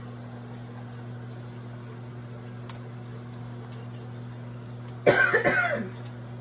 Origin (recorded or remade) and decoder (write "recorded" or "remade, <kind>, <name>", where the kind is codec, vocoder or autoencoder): recorded